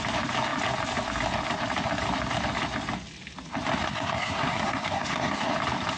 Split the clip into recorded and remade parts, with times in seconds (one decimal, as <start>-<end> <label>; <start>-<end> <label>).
0.0-3.8 recorded; 3.8-5.5 remade; 5.5-6.0 recorded